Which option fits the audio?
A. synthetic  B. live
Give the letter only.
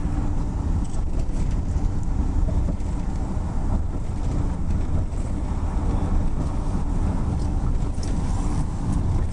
B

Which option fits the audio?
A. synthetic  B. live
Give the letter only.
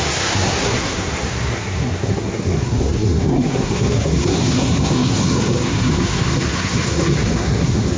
A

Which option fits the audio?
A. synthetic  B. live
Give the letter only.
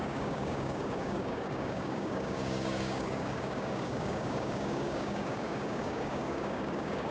A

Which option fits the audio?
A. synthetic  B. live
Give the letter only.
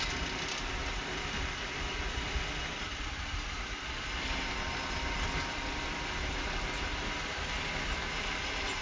B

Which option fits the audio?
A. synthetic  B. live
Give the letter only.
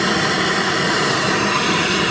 A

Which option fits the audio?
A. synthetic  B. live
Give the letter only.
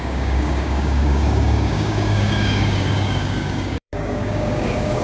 A